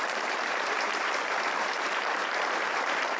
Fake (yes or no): yes